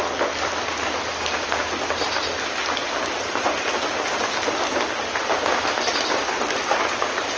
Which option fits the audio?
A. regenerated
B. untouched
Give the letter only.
B